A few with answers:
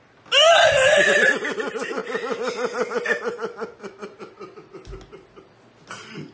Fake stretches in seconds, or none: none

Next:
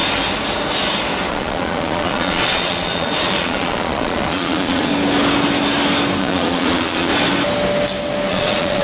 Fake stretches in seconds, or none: 1.3-4.9 (vocoder, Vocos); 6.2-7.1; 8.3-8.8

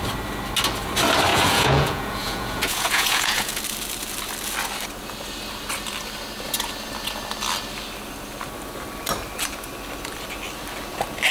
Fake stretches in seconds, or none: 1.3-3.6 (vocoder, Vocos)

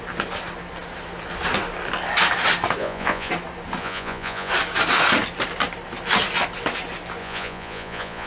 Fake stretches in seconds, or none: 2.8-3.3 (vocoder, Vocos); 3.8-4.5; 7.2-8.3

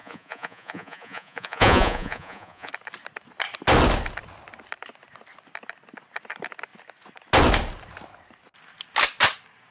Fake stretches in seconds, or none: 0.0-2.7 (vocoder, Vocos)

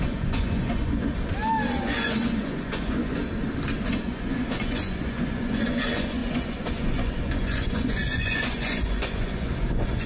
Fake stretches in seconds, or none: 0.0-1.1 (vocoder, Vocos); 1.8-3.2; 3.9-10.1